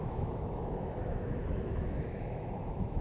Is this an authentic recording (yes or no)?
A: no